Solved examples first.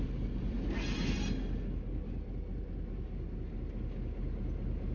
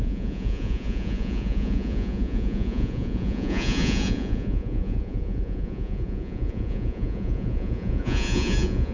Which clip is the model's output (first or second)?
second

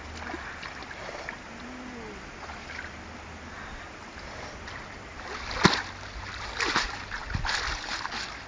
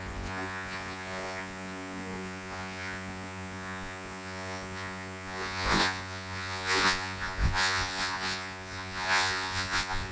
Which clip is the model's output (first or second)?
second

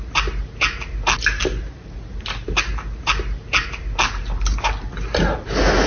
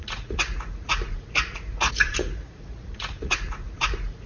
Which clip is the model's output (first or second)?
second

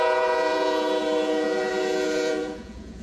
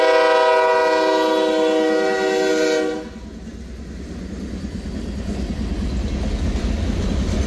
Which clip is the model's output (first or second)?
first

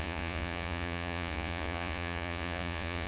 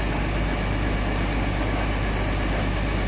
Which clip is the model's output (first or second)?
first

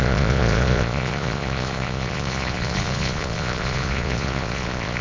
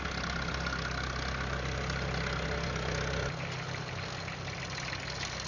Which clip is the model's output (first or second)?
first